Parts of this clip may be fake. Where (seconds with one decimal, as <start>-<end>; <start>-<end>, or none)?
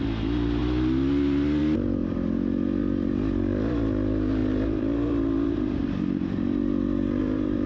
0.0-0.6; 1.6-7.7